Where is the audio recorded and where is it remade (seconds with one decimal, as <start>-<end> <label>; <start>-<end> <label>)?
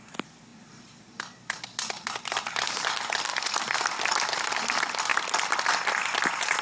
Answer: 0.0-3.3 remade; 3.3-4.4 recorded; 4.4-5.1 remade; 5.1-6.0 recorded; 6.0-6.6 remade